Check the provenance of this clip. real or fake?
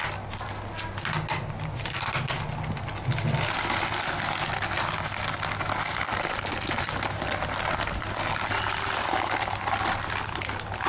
real